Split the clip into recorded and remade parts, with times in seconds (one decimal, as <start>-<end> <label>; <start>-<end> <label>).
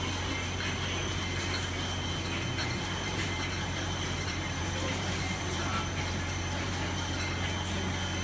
0.0-2.6 recorded; 2.6-6.7 remade; 6.7-8.2 recorded